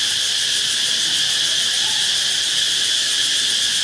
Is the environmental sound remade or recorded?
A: recorded